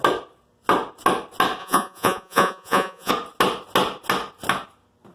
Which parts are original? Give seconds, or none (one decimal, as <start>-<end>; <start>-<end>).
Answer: 0.0-1.6; 3.1-5.1